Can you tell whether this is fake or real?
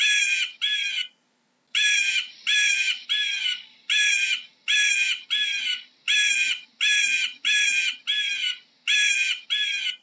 real